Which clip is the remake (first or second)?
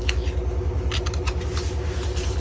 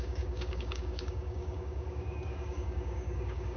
second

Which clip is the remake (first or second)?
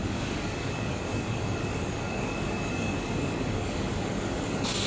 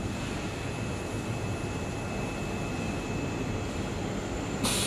first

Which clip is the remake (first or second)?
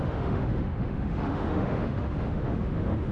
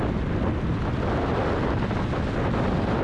first